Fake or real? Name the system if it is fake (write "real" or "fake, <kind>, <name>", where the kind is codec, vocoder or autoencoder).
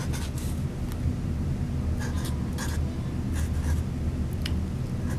real